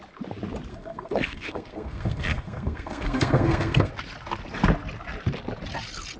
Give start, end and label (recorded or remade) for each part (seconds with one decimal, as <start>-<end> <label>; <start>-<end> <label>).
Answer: 0.0-0.7 recorded; 0.7-3.9 remade; 3.9-6.2 recorded